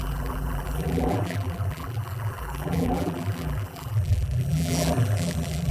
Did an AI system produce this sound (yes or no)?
yes